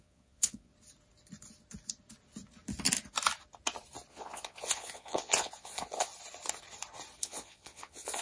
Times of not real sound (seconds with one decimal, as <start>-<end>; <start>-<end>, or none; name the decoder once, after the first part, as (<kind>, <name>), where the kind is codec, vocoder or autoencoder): 0.0-0.7 (vocoder, Vocos); 4.1-6.1; 7.2-8.2